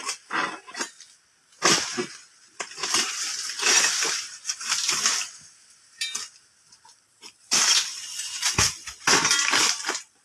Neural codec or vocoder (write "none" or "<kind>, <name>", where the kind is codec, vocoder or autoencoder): none